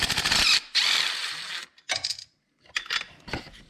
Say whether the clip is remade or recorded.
recorded